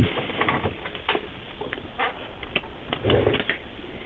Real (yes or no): yes